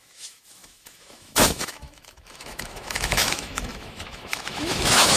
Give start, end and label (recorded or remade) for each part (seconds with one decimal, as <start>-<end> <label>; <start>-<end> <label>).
0.0-5.2 remade